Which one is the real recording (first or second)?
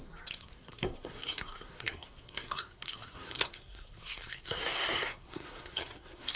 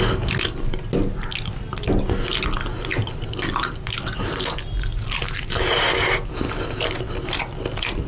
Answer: second